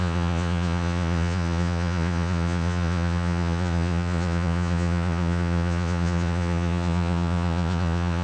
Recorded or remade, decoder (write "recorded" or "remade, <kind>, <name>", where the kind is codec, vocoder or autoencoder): remade, vocoder, Vocos